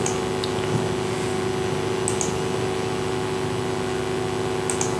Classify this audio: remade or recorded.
recorded